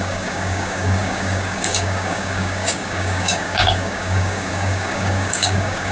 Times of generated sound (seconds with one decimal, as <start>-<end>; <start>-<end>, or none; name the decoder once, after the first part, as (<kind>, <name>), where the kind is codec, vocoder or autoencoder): 0.0-5.9 (codec, DAC)